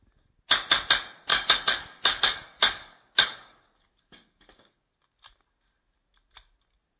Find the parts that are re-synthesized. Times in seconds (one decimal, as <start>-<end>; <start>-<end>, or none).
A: 1.3-4.9